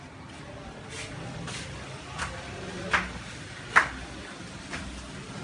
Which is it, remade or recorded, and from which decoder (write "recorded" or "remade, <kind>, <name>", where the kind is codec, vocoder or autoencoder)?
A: recorded